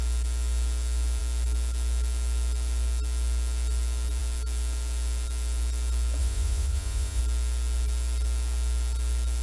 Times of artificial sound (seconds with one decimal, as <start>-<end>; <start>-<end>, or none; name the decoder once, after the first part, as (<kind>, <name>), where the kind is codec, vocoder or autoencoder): 6.2-7.2 (vocoder, Vocos)

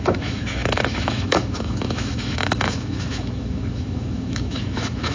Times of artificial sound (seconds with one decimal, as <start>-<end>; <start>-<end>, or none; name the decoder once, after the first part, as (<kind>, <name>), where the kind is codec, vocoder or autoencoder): 0.0-5.1 (autoencoder, DAC-VAE)

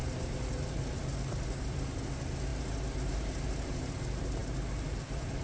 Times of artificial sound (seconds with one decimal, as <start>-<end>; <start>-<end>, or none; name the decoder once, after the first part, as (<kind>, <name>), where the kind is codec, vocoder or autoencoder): none

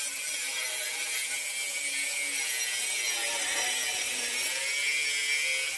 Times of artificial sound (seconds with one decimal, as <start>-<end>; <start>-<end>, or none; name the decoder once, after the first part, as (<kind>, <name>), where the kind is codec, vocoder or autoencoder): none

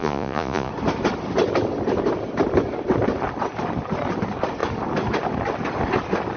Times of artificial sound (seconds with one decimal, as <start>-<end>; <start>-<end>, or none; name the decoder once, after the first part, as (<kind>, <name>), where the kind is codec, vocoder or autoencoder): 0.0-0.7 (vocoder, Vocos)

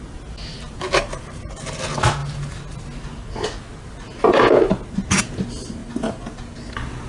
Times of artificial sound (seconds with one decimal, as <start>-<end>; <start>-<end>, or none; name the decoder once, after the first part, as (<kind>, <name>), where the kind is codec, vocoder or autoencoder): 0.5-1.8 (vocoder, BigVGAN v2)